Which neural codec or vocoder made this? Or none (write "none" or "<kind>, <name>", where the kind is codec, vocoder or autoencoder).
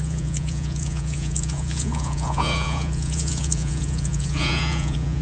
vocoder, Vocos